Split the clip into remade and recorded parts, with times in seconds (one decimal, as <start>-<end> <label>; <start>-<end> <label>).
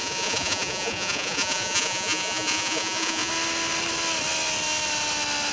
0.0-3.3 remade; 3.3-5.5 recorded